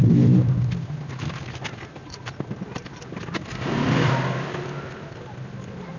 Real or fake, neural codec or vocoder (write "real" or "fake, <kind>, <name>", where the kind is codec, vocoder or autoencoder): real